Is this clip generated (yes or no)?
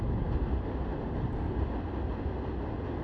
no